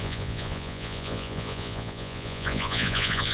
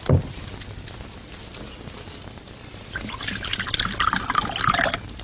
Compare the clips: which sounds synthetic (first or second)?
first